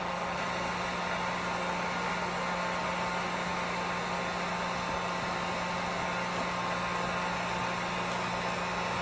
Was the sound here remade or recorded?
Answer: recorded